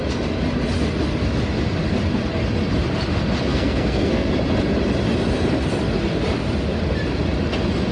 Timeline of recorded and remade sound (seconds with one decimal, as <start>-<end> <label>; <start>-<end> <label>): 0.0-3.5 recorded; 3.5-4.3 remade; 4.3-7.9 recorded